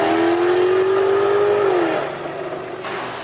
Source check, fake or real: real